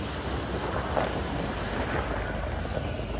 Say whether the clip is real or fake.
real